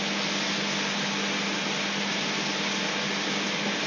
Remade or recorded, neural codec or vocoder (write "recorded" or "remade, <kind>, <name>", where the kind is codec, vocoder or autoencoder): recorded